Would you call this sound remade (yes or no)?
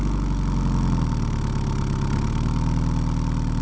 no